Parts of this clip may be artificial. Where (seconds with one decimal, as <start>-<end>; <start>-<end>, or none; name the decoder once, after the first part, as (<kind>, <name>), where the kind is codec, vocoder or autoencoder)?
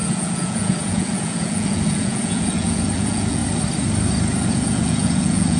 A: 0.0-3.4 (vocoder, Vocos); 4.5-5.6